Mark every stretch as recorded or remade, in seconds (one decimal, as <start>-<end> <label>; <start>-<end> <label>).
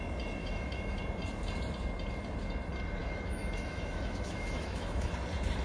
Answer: 0.0-0.4 recorded; 0.4-1.0 remade; 1.0-3.0 recorded; 3.0-5.1 remade; 5.1-5.6 recorded